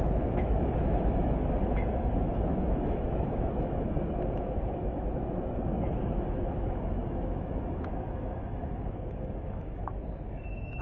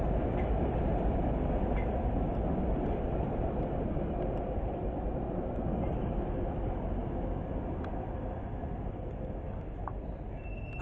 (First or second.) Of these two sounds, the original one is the second